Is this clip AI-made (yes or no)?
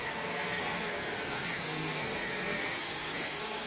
yes